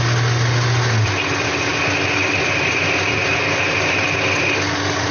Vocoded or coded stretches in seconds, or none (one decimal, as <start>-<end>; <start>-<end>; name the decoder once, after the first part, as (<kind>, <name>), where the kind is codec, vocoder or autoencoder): none

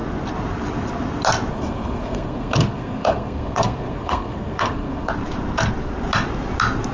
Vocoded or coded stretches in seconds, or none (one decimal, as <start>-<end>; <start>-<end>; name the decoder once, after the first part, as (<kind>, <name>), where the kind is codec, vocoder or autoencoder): 1.5-5.1 (codec, SNAC)

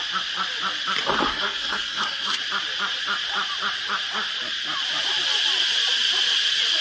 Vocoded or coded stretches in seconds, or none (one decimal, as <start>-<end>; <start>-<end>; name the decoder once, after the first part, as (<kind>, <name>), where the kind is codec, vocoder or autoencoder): 1.3-2.4 (codec, SNAC)

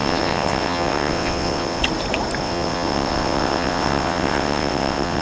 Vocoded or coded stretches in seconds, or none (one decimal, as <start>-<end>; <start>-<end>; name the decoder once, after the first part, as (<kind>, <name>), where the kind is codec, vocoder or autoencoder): 0.0-1.8 (vocoder, WaveNeXt); 2.4-5.2

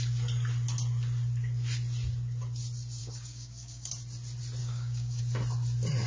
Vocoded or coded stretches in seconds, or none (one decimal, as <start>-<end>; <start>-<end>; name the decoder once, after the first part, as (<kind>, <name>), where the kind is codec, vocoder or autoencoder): 3.0-3.9 (codec, DAC); 4.6-5.2